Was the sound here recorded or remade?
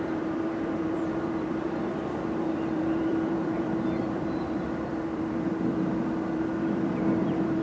remade